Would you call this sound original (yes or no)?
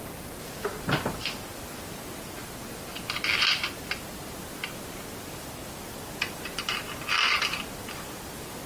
yes